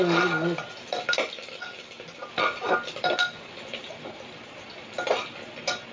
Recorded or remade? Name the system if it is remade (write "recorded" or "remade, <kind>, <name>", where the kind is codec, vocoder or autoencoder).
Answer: recorded